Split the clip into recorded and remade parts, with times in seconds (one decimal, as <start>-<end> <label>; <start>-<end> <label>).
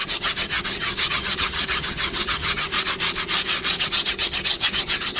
0.0-2.7 remade; 2.7-3.8 recorded; 3.8-5.2 remade